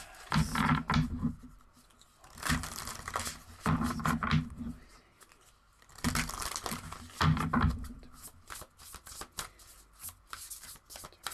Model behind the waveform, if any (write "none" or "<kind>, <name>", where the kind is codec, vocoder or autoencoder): none